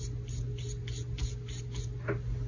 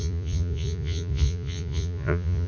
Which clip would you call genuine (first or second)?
first